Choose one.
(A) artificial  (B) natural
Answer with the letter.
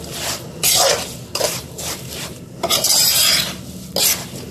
B